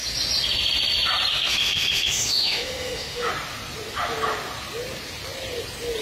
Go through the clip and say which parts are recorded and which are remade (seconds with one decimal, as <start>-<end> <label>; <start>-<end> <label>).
0.0-1.3 recorded; 1.3-3.3 remade; 3.3-6.0 recorded